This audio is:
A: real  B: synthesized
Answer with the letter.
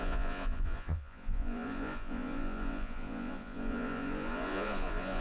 B